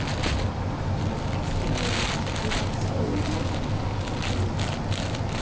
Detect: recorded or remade recorded